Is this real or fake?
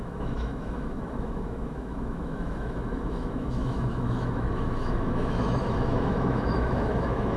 fake